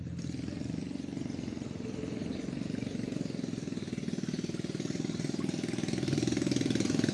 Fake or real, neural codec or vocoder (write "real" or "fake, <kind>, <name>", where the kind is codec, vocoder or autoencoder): real